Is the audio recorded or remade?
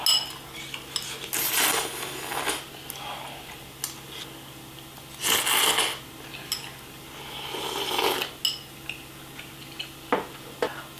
recorded